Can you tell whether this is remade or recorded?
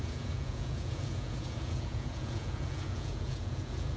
remade